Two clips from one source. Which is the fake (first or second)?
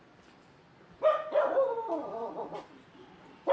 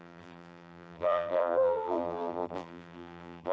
second